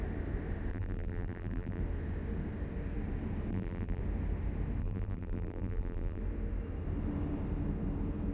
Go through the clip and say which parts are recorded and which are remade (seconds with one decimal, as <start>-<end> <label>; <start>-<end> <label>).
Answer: 0.0-0.7 recorded; 0.7-1.8 remade; 1.8-3.5 recorded; 3.5-4.0 remade; 4.0-4.8 recorded; 4.8-6.2 remade; 6.2-8.3 recorded